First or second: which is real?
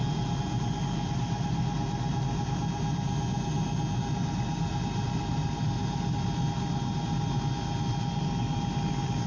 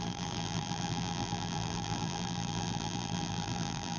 first